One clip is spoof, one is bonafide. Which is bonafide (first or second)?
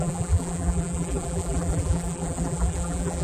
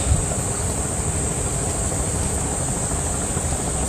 second